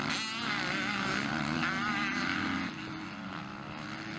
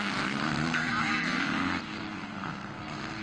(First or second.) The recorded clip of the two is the first